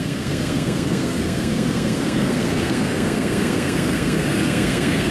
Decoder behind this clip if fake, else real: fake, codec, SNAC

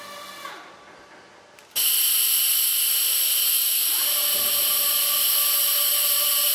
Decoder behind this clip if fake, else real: real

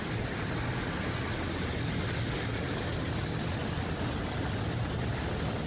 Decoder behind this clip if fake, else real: real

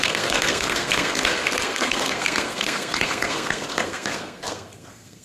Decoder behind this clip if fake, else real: fake, codec, SNAC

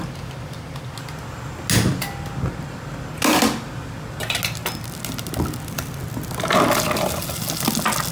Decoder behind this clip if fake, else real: real